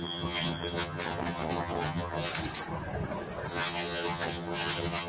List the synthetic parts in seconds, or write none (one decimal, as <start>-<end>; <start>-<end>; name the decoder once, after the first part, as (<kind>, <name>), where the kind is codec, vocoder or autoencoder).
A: 0.0-2.3 (vocoder, HiFi-GAN); 3.5-5.1